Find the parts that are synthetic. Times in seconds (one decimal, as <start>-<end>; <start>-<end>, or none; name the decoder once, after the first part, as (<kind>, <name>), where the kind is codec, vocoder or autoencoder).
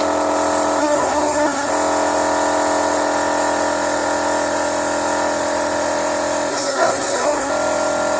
0.8-1.7 (codec, SNAC); 6.5-7.5